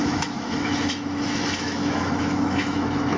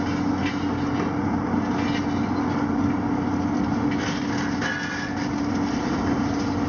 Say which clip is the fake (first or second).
first